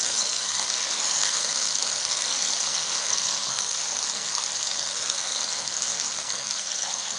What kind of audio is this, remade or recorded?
remade